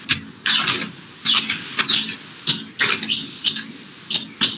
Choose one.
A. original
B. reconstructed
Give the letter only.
A